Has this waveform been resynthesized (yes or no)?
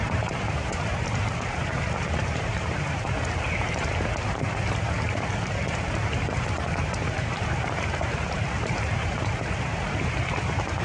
yes